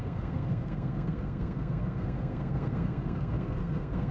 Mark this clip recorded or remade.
remade